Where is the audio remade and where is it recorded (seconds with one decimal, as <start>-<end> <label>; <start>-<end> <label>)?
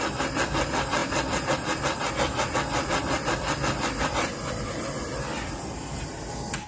0.0-6.7 recorded